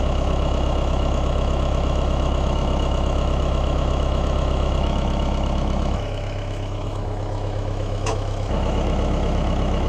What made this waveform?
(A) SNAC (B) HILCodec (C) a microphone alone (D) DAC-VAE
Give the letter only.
D